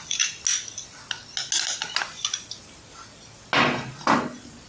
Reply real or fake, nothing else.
real